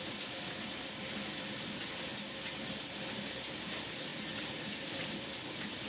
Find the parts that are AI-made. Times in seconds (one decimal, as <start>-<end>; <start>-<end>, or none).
none